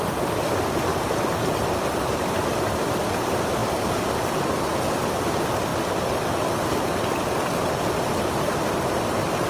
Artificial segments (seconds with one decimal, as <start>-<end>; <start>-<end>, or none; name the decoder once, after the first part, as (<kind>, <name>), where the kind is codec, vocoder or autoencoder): 0.9-3.0 (vocoder, BigVGAN v2)